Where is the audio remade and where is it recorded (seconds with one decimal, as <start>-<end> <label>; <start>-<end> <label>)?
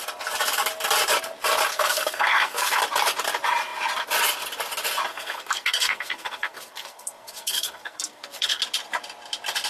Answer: 0.0-1.7 recorded; 1.7-2.8 remade; 2.8-5.1 recorded; 5.1-8.6 remade; 8.6-9.7 recorded